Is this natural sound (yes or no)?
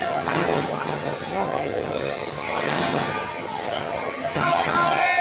no